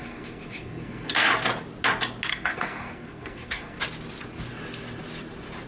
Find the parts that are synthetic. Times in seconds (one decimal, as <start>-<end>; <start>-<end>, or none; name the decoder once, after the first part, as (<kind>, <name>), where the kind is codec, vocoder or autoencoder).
0.0-1.3 (codec, SNAC); 2.3-3.8